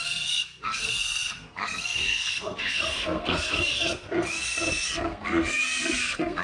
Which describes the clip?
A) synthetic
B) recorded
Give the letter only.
A